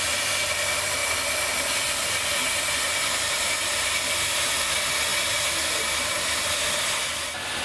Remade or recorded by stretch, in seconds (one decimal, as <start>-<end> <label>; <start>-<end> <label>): 0.0-7.6 recorded